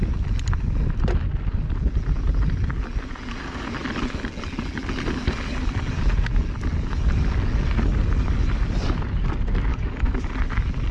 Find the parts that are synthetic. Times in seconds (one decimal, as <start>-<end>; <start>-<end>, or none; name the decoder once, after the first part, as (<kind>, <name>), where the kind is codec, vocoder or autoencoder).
9.7-10.3 (codec, DAC)